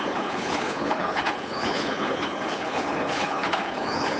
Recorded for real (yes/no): no